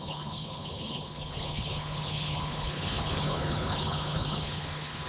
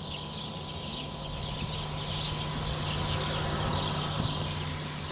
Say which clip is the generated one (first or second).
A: first